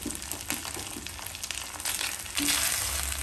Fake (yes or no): no